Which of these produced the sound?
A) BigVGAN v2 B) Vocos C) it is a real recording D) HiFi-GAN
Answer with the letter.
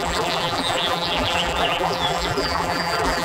A